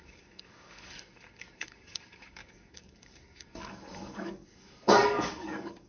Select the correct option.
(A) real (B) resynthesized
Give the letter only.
B